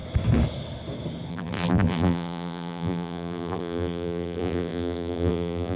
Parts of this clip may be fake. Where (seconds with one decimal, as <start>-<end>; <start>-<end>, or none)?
1.3-5.8

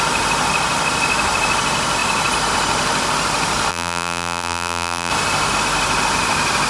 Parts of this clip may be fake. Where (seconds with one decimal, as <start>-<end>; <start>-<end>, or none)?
3.7-5.1

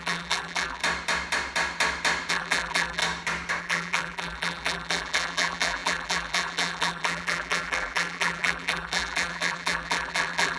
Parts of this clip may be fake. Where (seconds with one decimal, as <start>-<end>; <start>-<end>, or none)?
0.0-0.8; 2.3-3.0; 3.6-10.6

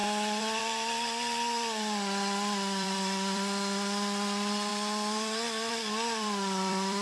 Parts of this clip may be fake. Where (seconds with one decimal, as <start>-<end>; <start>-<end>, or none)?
0.0-7.0

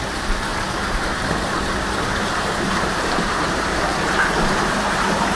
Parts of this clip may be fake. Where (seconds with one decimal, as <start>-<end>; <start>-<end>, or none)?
0.5-1.2; 2.1-5.4

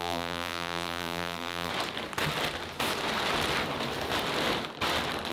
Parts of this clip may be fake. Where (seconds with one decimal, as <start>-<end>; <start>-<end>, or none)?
0.0-1.7

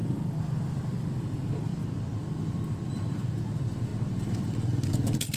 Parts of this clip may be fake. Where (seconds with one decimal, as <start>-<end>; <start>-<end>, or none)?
0.6-1.7; 3.0-3.9; 4.9-5.4

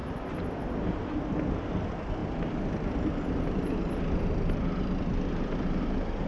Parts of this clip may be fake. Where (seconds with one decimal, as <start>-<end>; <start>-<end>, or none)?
2.2-5.8